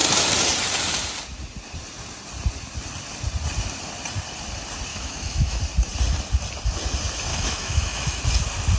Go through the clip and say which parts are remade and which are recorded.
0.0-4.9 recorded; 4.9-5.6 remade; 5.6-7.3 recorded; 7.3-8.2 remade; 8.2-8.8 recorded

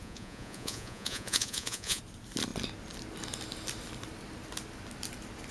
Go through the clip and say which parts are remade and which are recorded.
0.0-2.0 remade; 2.0-5.5 recorded

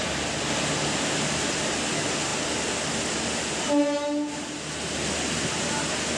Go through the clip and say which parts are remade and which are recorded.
0.0-6.2 recorded

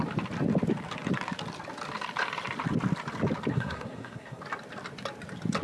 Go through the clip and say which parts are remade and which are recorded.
0.0-3.5 recorded; 3.5-4.4 remade; 4.4-5.6 recorded

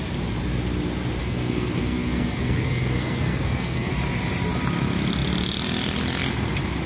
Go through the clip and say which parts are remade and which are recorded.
0.0-1.2 recorded; 1.2-3.9 remade; 3.9-6.9 recorded

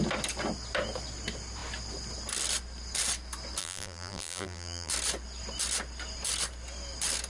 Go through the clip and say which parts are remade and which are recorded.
0.0-3.6 recorded; 3.6-4.9 remade; 4.9-7.3 recorded

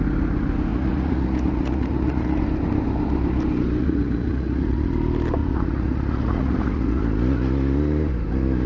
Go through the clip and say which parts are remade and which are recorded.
0.0-0.7 recorded; 0.7-2.4 remade; 2.4-3.8 recorded; 3.8-4.9 remade; 4.9-5.4 recorded; 5.4-7.0 remade; 7.0-8.7 recorded